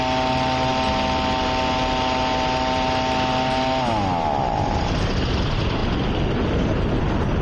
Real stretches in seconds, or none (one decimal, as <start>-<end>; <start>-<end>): 0.0-7.4